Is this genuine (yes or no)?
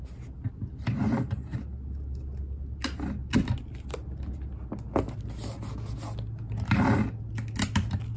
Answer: yes